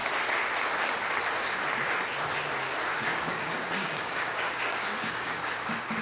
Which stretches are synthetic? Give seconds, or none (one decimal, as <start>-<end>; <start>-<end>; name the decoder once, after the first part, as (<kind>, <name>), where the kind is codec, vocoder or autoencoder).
2.9-5.4 (codec, DAC)